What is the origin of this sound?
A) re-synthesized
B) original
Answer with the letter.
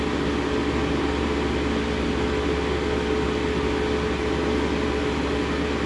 B